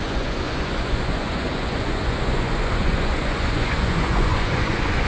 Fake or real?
fake